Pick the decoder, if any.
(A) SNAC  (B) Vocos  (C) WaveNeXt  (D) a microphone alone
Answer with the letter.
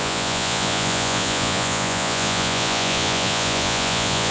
B